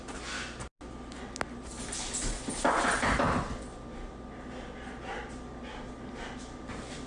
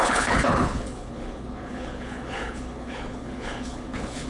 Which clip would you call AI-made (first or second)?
second